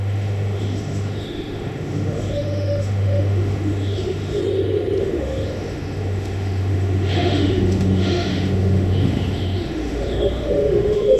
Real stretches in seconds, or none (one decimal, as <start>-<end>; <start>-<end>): 4.4-5.0